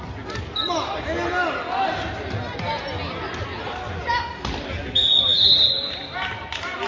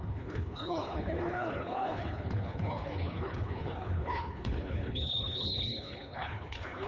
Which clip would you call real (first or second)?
first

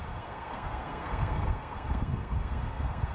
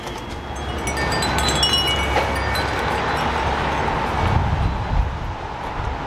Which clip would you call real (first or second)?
second